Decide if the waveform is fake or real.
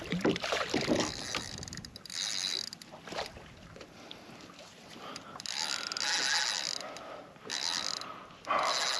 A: real